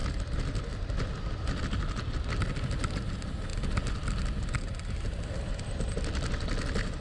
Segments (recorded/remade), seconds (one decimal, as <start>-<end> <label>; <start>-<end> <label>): 0.0-7.0 recorded

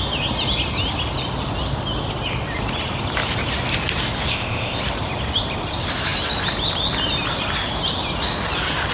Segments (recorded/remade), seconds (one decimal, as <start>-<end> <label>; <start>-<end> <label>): 0.0-4.3 recorded; 4.3-4.8 remade; 4.8-8.9 recorded

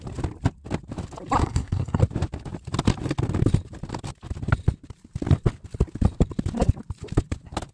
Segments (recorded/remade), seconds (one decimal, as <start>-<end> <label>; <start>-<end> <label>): 0.0-1.4 recorded; 1.4-2.0 remade; 2.0-7.7 recorded